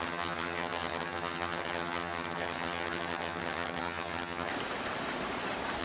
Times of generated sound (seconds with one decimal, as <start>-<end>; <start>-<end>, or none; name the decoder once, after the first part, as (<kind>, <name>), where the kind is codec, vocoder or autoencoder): 0.0-4.5 (vocoder, HiFi-GAN)